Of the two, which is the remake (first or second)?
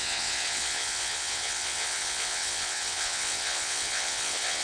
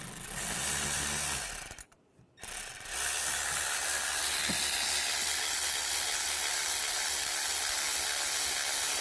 first